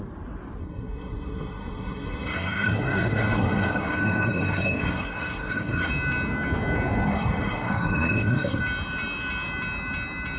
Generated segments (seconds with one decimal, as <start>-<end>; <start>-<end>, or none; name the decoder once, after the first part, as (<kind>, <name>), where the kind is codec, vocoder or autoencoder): 0.6-5.9 (codec, SNAC); 7.1-8.6